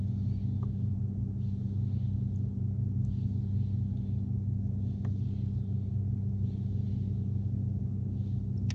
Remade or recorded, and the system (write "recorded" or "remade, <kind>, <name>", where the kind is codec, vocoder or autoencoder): recorded